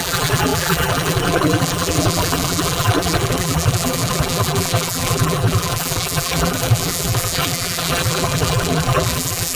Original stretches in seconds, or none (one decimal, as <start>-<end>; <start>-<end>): none